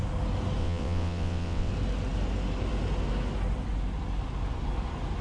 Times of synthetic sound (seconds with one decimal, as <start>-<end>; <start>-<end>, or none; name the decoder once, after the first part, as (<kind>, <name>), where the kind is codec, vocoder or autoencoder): 0.6-1.7 (vocoder, WaveNeXt)